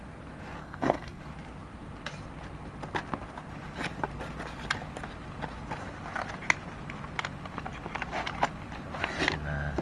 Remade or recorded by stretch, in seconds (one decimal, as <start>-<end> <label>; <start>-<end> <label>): 0.0-0.6 recorded; 0.6-1.2 remade; 1.2-9.8 recorded